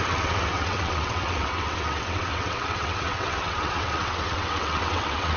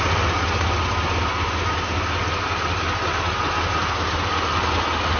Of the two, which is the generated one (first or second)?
first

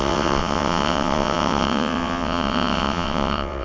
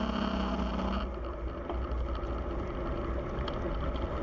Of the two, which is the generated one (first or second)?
first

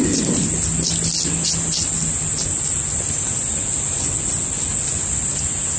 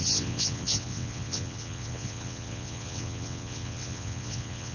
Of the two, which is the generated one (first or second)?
second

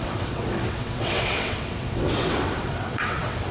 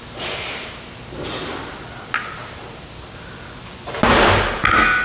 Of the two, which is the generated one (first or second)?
first